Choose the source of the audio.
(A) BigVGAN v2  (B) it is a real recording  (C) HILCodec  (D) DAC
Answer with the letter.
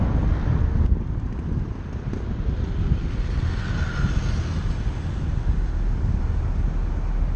B